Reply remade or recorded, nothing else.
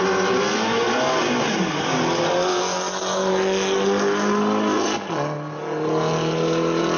recorded